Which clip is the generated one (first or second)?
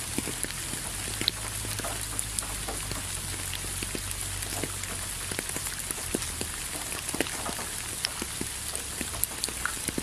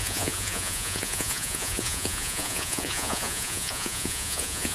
second